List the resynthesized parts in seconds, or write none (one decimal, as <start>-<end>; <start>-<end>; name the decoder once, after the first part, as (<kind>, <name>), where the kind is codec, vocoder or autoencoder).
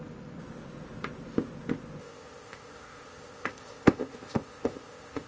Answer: 2.0-5.3 (codec, ZipCodec)